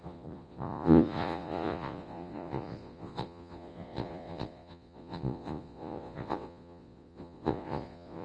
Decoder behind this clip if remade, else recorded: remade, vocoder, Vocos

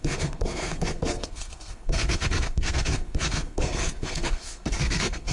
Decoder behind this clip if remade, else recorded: remade, codec, SNAC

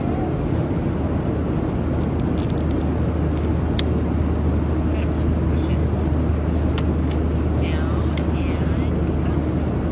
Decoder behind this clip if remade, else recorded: recorded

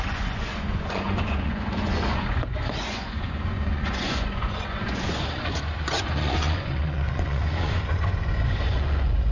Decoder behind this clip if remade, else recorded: remade, vocoder, Vocos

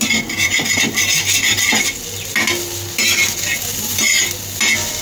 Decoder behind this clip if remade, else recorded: recorded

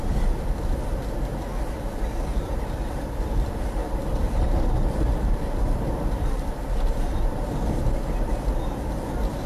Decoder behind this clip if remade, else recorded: remade, vocoder, BigVGAN v2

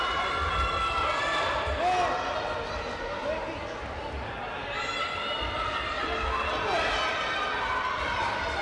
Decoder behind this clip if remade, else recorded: recorded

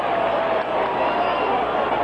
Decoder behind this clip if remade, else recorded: recorded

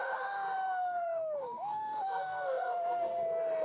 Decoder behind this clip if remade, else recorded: remade, autoencoder, DAC-VAE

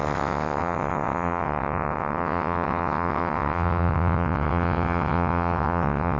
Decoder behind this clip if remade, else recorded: remade, vocoder, WaveNeXt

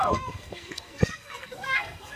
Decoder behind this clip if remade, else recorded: remade, codec, SNAC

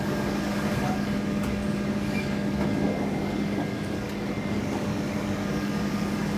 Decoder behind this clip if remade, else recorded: remade, codec, DAC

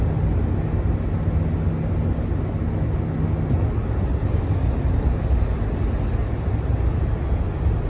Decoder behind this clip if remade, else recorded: recorded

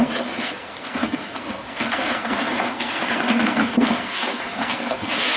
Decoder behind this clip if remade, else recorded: remade, codec, SNAC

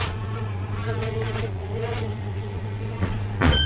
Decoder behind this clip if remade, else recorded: remade, vocoder, Vocos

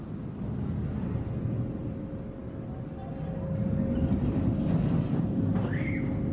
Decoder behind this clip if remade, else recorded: recorded